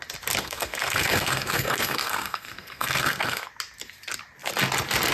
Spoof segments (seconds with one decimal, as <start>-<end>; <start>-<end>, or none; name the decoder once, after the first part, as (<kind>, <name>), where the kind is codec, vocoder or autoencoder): 0.4-3.5 (codec, SNAC)